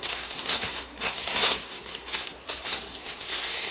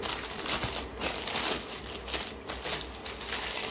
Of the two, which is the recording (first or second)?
second